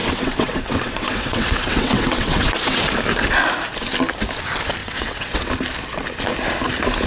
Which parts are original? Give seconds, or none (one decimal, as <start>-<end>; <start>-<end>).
2.9-4.8; 5.5-7.1